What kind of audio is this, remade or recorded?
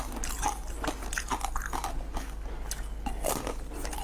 recorded